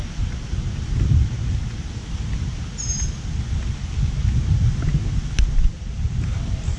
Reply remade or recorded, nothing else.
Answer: recorded